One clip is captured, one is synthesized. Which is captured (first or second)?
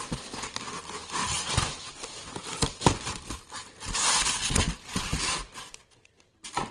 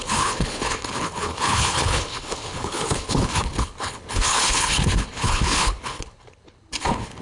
first